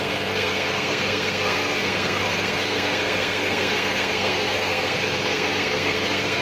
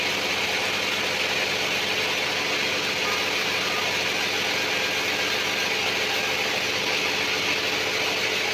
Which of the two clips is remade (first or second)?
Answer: first